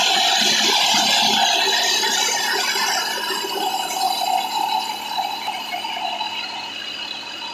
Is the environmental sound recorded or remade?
recorded